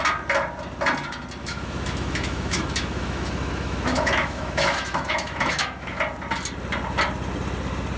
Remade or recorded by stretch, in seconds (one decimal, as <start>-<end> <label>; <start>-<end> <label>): 0.0-1.4 recorded; 1.4-6.0 remade; 6.0-8.0 recorded